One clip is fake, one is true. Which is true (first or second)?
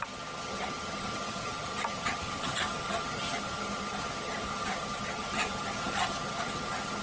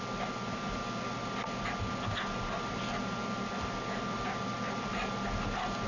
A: second